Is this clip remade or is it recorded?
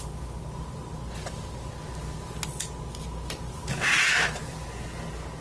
recorded